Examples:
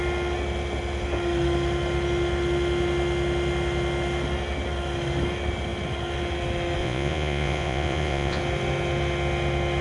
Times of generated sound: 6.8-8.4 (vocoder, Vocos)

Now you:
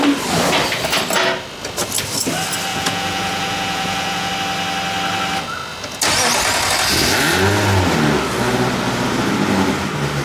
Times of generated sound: 2.7-4.3 (vocoder, Vocos)

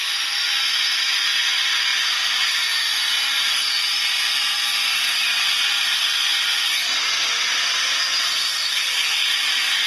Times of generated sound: none

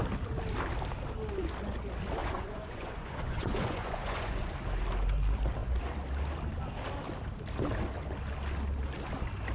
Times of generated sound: 2.2-4.5 (vocoder, Vocos)

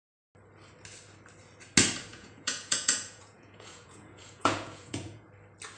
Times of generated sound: 2.1-5.3 (vocoder, Vocos)

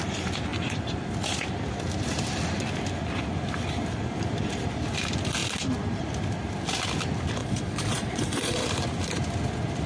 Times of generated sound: 7.4-8.6 (vocoder, Vocos)

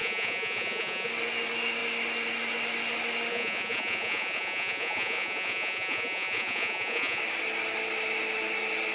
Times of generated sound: 0.0-1.1 (vocoder, Vocos); 3.3-7.2

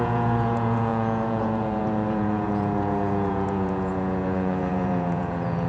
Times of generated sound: 0.0-5.7 (vocoder, Vocos)